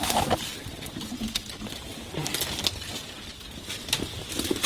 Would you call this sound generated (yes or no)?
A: no